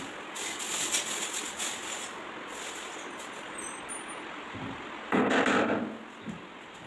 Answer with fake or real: real